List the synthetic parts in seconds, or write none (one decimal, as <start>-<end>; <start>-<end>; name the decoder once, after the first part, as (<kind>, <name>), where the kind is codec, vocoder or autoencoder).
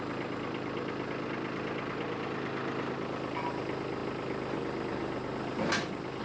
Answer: none